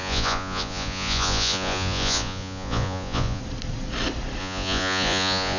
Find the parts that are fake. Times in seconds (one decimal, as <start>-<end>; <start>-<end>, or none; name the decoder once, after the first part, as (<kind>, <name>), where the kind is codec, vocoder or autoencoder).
0.0-3.4 (vocoder, Vocos); 4.4-5.6